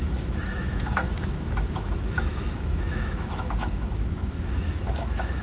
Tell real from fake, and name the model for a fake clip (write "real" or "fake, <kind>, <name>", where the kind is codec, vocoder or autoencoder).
fake, autoencoder, DAC-VAE